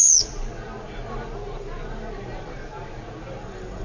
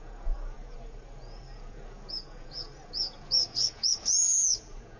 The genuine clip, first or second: first